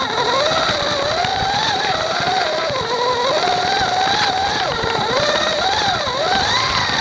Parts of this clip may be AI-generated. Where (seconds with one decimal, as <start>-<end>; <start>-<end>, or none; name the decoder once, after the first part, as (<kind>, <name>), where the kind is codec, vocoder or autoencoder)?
1.3-3.1 (vocoder, BigVGAN v2); 4.5-5.9